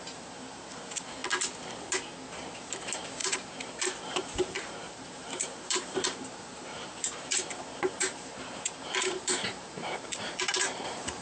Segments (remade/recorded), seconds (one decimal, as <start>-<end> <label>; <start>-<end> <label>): 0.0-1.2 remade; 1.2-2.5 recorded; 2.5-11.2 remade